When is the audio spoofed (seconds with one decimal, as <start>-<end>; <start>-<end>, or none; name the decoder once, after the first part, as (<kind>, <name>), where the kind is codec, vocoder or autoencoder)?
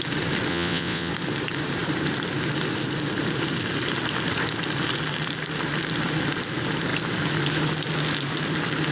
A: 0.5-1.1 (vocoder, WaveNeXt)